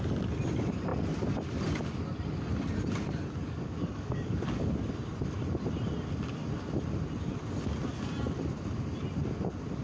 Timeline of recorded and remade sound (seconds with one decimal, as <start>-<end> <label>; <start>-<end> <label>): 0.0-3.4 recorded; 3.4-4.9 remade; 4.9-9.8 recorded